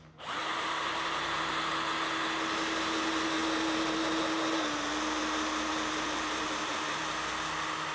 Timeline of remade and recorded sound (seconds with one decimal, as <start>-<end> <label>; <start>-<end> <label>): 0.0-0.4 recorded; 0.4-1.5 remade; 1.5-5.7 recorded; 5.7-7.1 remade; 7.1-7.9 recorded